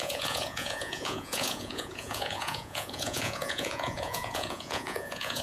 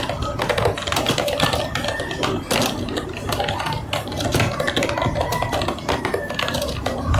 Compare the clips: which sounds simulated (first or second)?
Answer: first